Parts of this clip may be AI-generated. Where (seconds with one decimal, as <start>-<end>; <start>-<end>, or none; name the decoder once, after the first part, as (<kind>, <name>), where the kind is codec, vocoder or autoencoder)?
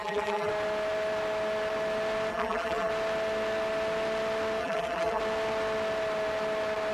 0.0-0.5 (vocoder, BigVGAN v2); 2.3-2.9; 4.6-5.2